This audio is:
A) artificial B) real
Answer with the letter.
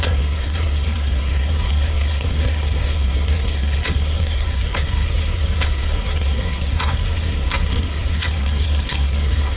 A